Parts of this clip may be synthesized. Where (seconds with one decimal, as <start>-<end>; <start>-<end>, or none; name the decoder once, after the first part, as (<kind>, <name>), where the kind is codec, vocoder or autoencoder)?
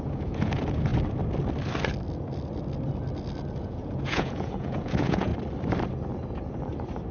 0.0-0.9 (vocoder, Vocos); 3.6-5.3